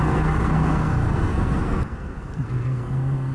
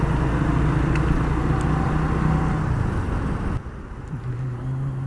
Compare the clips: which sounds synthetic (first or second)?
first